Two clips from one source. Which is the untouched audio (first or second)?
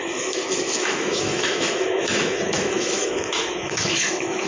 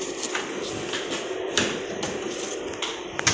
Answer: second